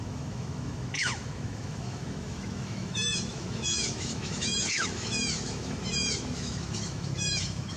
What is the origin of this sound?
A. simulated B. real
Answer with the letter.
A